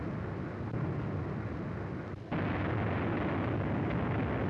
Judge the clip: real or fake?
real